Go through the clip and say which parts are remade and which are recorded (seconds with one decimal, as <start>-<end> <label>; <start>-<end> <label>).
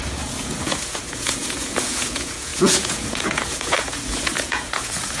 0.0-5.2 remade